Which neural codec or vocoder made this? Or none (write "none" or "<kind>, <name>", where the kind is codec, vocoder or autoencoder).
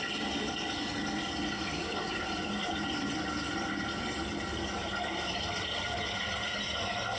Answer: none